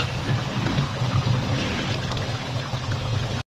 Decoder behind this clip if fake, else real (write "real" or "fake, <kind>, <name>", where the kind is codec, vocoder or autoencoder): real